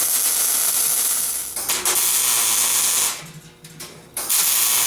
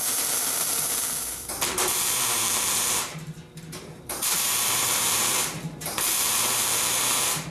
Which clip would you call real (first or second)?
first